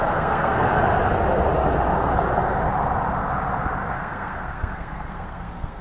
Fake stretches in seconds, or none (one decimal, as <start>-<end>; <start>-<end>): 0.0-0.7; 3.9-5.8